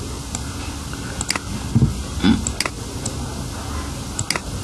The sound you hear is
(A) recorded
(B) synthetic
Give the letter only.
A